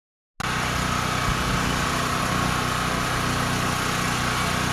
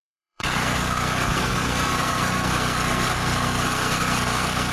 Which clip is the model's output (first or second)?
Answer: second